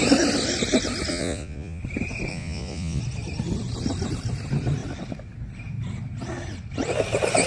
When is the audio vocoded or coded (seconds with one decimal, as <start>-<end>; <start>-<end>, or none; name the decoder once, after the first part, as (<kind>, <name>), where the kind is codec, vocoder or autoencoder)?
1.1-1.8 (vocoder, Vocos); 2.3-3.0